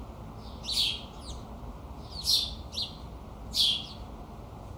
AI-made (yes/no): no